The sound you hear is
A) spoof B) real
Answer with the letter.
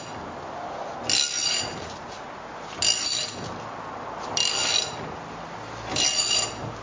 B